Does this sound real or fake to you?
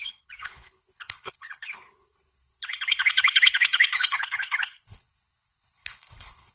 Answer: fake